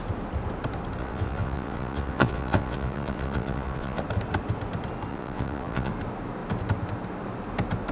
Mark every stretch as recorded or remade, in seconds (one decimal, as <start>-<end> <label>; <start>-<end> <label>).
0.0-1.0 recorded; 1.0-4.0 remade; 4.0-5.1 recorded; 5.1-5.9 remade; 5.9-7.9 recorded